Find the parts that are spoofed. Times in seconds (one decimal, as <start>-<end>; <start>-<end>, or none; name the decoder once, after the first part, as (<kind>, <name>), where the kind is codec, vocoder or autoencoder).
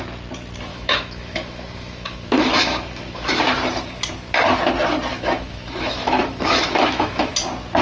0.7-3.4 (autoencoder, DAC-VAE); 5.1-7.3